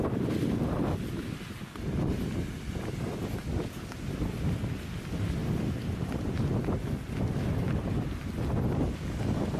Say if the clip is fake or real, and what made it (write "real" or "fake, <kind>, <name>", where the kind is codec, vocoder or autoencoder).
real